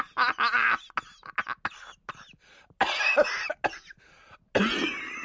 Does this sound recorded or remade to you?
recorded